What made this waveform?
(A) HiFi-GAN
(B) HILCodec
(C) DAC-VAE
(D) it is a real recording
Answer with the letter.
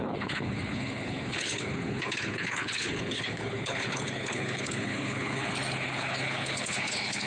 B